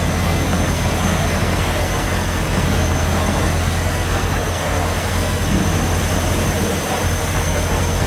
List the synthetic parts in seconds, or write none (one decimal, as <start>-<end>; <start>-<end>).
0.0-5.6; 7.2-8.1